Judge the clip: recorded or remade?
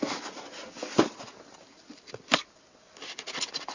recorded